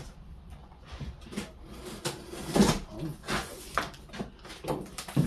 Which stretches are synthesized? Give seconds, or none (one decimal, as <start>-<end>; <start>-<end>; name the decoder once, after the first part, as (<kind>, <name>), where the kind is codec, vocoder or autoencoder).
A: 0.6-1.1 (vocoder, Vocos); 3.1-3.8